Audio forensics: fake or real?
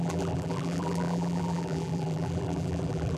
fake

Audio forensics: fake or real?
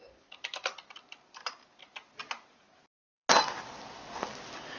real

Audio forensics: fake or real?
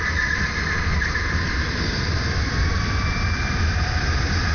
real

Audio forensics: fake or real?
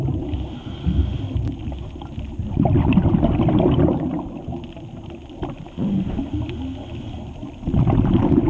real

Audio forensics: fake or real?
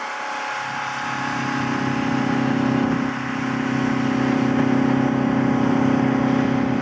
real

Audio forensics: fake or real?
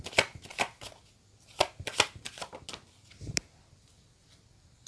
real